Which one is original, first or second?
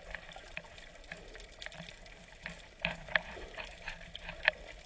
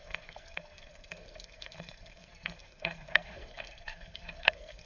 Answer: first